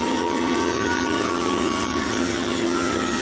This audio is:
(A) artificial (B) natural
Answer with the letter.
A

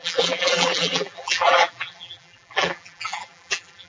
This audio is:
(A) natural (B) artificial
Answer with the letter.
B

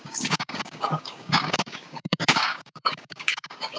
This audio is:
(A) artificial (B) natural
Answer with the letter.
A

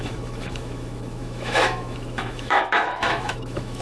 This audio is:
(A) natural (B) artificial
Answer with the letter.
B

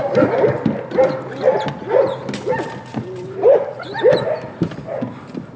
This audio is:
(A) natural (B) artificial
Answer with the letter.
A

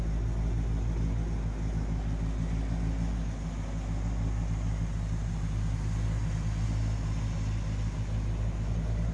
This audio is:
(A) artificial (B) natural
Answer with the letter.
B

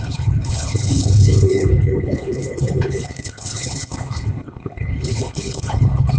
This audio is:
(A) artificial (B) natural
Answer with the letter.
A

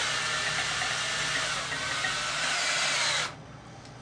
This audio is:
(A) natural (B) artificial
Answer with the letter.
A